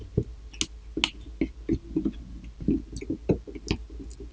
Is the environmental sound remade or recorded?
recorded